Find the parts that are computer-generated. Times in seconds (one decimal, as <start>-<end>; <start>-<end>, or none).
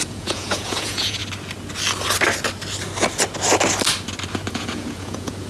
0.0-1.2; 4.5-5.5